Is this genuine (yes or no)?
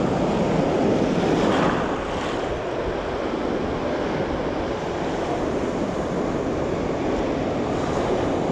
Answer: yes